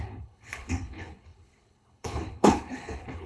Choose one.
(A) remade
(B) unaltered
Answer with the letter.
A